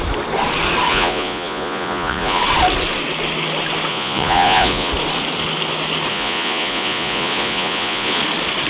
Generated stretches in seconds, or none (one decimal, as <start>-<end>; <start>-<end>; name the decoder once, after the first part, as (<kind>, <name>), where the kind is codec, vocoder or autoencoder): 0.9-2.4 (vocoder, Vocos); 3.9-4.9; 6.1-8.2